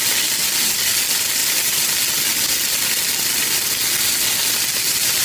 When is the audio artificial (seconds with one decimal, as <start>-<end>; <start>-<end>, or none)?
none